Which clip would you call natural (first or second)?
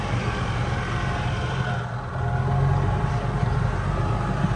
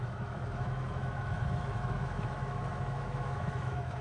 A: first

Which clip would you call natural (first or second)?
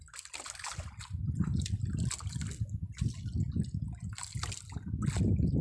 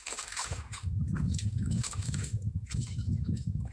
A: first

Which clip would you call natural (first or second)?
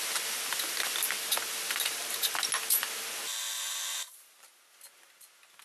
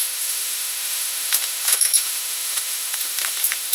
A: first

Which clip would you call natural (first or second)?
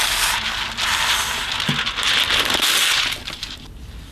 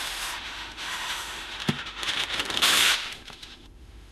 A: first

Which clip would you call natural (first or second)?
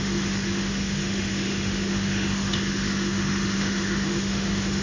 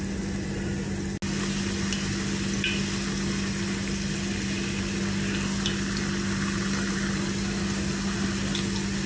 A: second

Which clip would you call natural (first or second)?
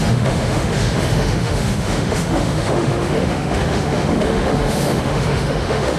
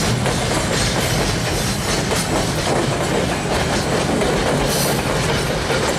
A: second